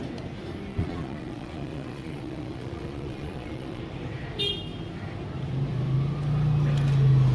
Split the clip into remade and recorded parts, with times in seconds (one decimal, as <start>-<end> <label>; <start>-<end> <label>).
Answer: 0.0-0.7 recorded; 0.7-3.8 remade; 3.8-7.3 recorded